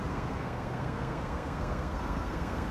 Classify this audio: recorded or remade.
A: remade